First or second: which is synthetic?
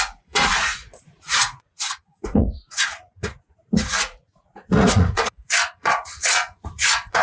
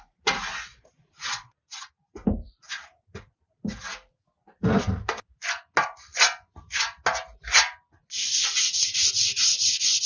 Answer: first